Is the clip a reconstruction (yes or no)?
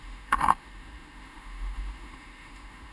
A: yes